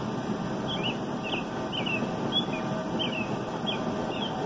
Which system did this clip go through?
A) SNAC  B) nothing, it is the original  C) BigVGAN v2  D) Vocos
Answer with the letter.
B